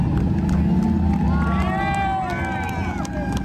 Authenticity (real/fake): real